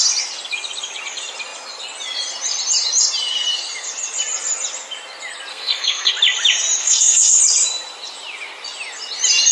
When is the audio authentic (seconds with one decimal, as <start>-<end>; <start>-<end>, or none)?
0.0-5.5; 6.1-6.8; 7.4-9.5